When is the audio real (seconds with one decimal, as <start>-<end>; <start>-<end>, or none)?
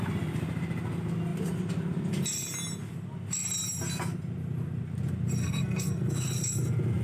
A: 0.0-5.4; 6.1-7.0